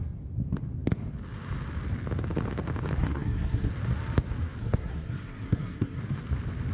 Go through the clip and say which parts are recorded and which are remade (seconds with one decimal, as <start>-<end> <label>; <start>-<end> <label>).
0.0-3.0 recorded; 3.0-3.7 remade; 3.7-4.6 recorded; 4.6-6.0 remade; 6.0-6.7 recorded